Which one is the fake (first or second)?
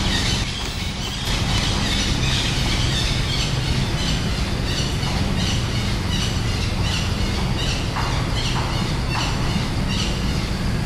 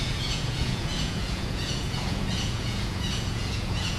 second